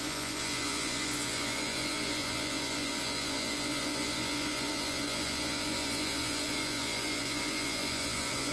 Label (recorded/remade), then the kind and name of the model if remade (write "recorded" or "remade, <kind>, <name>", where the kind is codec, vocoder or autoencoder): remade, vocoder, Vocos